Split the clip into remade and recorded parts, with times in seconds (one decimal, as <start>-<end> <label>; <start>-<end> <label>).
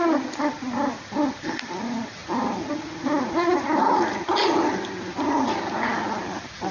0.0-6.7 recorded